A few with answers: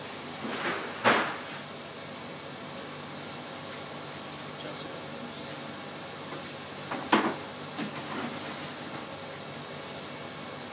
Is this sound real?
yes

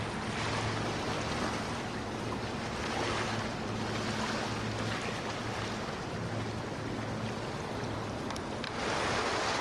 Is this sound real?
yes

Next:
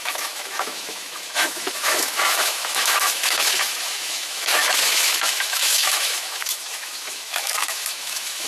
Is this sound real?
no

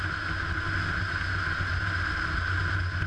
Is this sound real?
yes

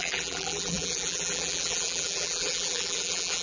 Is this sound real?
no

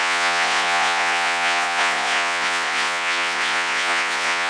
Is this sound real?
no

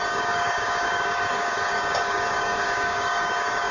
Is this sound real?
no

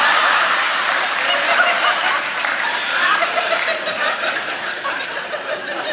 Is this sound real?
no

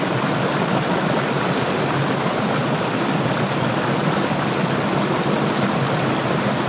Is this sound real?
yes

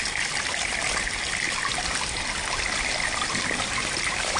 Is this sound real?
yes